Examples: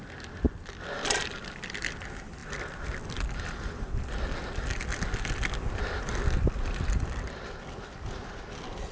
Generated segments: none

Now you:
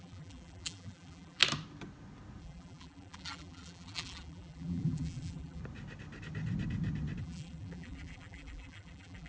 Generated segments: 0.0-1.4; 2.4-5.6; 7.2-9.3

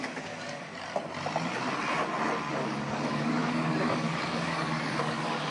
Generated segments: 0.0-0.7; 2.5-5.5

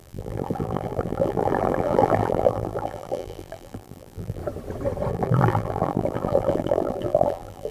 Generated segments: 0.0-4.4; 5.1-7.7